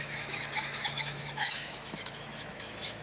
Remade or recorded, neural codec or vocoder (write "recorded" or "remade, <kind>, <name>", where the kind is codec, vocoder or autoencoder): remade, autoencoder, DAC-VAE